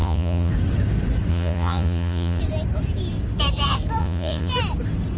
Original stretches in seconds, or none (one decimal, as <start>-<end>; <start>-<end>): 0.5-1.3; 2.4-4.0; 4.5-5.2